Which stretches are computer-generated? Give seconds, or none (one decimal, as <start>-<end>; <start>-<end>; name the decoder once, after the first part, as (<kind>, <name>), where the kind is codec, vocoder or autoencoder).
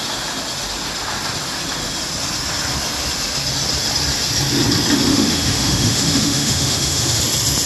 5.1-7.2 (autoencoder, DAC-VAE)